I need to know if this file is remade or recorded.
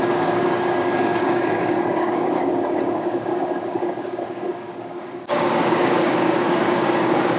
remade